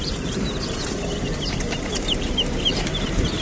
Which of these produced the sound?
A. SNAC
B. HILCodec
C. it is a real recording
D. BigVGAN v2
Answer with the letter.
D